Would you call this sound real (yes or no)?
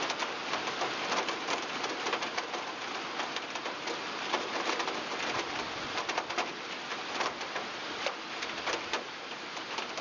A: yes